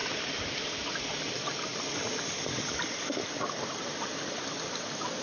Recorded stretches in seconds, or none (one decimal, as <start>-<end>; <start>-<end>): 0.0-5.2